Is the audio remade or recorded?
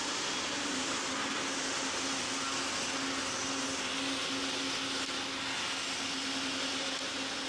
recorded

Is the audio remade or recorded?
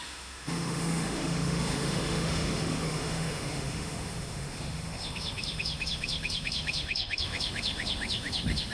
remade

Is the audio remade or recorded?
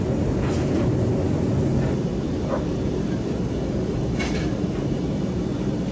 recorded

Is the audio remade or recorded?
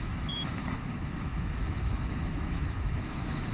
remade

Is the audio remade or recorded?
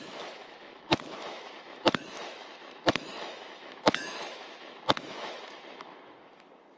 remade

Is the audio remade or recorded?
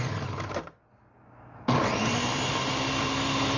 recorded